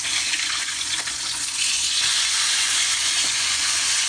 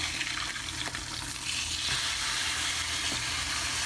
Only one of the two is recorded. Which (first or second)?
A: second